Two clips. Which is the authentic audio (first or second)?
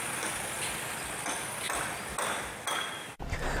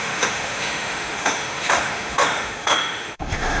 first